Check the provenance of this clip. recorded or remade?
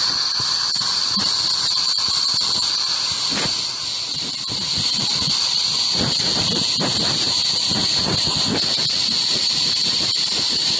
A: remade